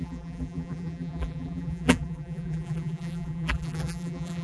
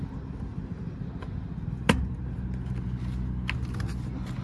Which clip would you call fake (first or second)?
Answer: first